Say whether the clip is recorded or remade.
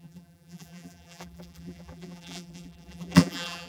remade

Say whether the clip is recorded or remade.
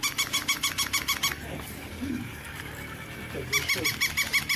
remade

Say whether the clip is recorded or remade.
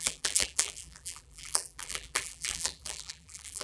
remade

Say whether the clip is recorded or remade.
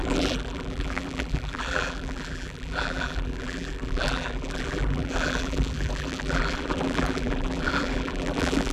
remade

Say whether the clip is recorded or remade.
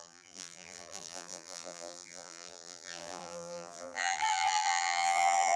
remade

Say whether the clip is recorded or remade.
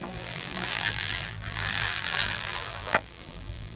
remade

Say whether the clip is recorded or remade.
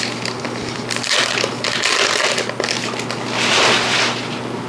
recorded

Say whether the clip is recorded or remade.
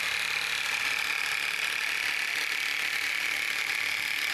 recorded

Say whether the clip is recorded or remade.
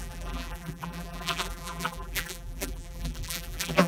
remade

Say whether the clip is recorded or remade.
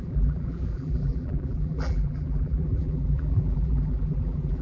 remade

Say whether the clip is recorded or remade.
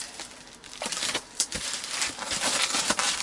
remade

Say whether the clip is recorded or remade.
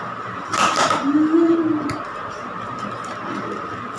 recorded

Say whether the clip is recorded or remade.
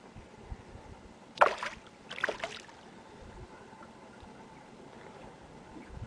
recorded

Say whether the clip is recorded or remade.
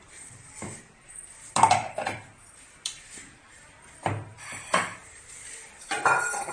remade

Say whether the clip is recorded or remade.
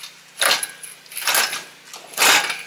recorded